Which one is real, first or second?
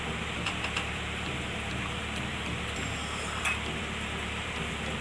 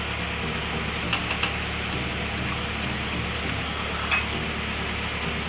second